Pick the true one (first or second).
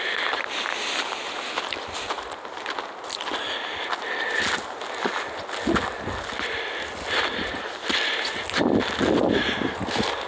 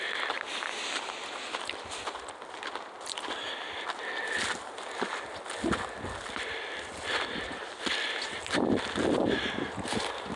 first